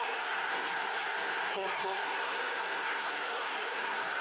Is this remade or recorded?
remade